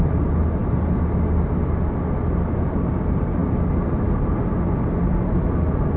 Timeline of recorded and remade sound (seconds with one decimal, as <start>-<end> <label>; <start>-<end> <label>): 0.0-6.0 recorded